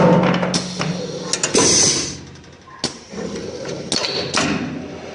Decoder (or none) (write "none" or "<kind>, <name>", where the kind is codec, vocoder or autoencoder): none